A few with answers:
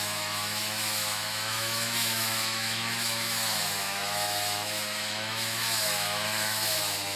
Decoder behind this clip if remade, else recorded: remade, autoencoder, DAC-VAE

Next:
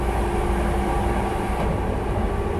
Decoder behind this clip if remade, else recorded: recorded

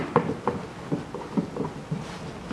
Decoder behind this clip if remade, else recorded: recorded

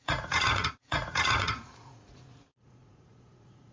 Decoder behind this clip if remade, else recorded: remade, vocoder, Vocos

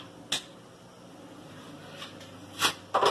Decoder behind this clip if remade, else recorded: recorded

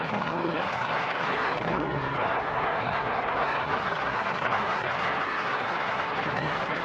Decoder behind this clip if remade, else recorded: remade, codec, SNAC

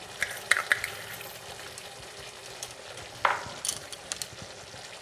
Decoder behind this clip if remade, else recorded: recorded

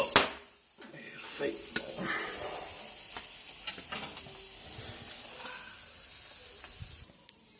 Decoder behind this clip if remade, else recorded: recorded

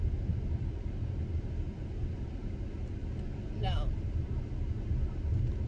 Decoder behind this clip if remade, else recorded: recorded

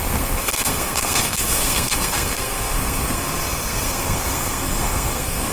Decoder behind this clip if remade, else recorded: remade, codec, SNAC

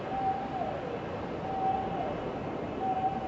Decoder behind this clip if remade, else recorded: recorded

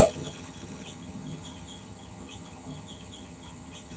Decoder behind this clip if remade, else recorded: remade, vocoder, HiFi-GAN